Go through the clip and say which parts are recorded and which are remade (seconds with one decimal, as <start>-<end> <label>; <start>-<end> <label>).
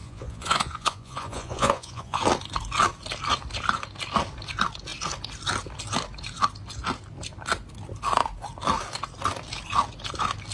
0.0-2.2 remade; 2.2-10.5 recorded